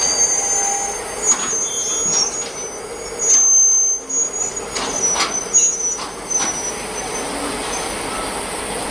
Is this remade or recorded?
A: recorded